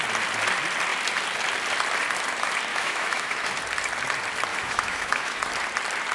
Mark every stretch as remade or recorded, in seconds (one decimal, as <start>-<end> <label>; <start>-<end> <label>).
0.0-2.7 recorded; 2.7-3.5 remade; 3.5-4.5 recorded; 4.5-5.4 remade; 5.4-6.1 recorded